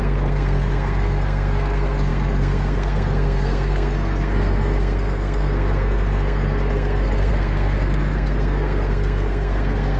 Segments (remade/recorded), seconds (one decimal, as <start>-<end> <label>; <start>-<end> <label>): 0.0-10.0 remade